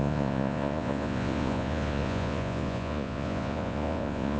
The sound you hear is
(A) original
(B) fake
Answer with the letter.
B